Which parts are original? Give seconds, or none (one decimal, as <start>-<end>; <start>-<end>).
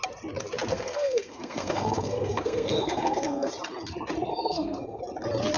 0.0-0.7; 3.5-4.3; 5.0-5.6